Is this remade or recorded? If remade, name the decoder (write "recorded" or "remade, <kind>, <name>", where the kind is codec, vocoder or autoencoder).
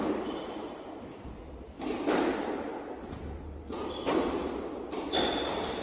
recorded